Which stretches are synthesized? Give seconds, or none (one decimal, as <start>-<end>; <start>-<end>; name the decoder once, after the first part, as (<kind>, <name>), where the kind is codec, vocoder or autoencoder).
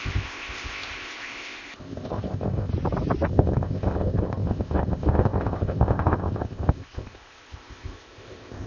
0.0-2.7 (codec, ZipCodec); 3.3-8.7